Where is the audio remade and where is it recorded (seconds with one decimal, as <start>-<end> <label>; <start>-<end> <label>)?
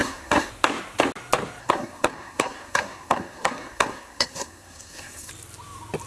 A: 0.0-0.5 remade; 0.5-1.6 recorded; 1.6-5.3 remade; 5.3-6.1 recorded